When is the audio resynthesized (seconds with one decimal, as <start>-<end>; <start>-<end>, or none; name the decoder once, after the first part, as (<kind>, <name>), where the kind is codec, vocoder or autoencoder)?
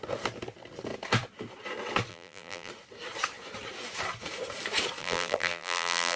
2.1-2.7 (vocoder, BigVGAN v2); 5.0-6.2